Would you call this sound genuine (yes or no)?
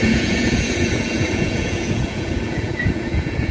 no